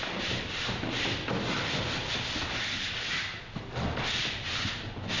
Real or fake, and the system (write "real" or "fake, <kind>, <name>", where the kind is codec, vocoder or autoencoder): real